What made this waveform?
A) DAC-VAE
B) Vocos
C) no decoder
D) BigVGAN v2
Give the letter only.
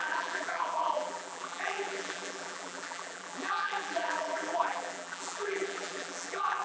D